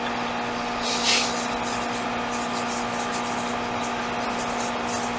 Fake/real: real